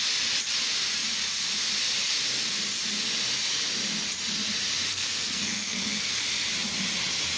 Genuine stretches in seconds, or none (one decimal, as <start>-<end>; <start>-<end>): 0.0-4.9; 6.2-7.4